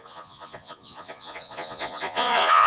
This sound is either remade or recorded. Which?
remade